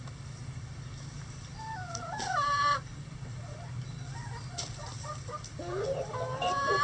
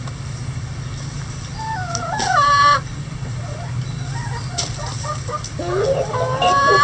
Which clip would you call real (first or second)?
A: second